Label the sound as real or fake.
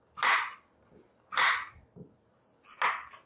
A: real